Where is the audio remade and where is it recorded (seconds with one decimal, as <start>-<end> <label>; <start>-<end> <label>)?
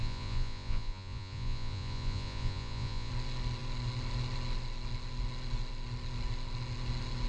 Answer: 0.0-3.1 remade; 3.1-7.3 recorded